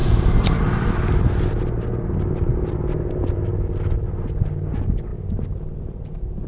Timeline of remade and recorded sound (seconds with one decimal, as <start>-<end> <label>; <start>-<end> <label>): 0.0-6.5 recorded